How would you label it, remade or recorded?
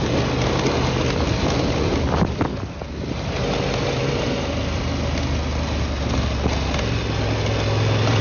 recorded